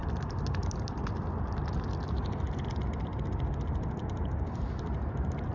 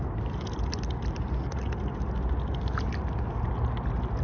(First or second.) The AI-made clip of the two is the first